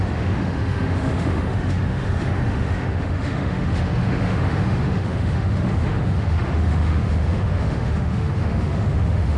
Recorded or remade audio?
remade